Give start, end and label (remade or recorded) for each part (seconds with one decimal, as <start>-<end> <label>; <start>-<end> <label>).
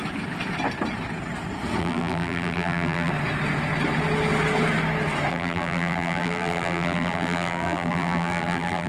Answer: 0.0-1.8 recorded; 1.8-3.1 remade; 3.1-5.3 recorded; 5.3-8.9 remade